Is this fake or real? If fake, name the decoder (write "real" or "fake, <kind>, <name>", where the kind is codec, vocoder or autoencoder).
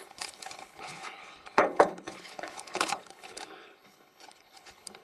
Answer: fake, codec, HILCodec